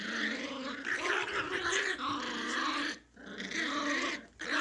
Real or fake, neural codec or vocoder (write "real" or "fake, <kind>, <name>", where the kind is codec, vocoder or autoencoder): real